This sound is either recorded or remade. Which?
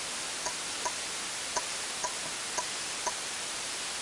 remade